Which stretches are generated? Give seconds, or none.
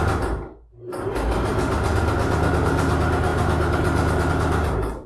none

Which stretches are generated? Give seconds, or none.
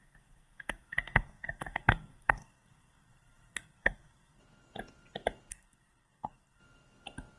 0.0-4.4; 5.5-6.6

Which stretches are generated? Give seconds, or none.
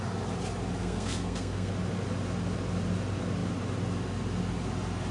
0.8-1.7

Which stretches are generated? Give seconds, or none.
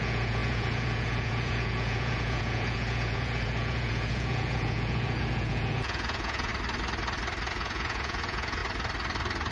0.0-6.5; 7.5-8.6